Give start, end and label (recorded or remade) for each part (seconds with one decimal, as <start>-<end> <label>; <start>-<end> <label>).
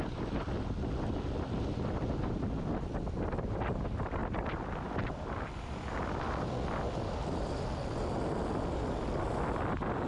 0.0-10.1 recorded